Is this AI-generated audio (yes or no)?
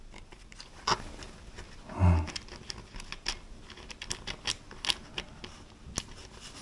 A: no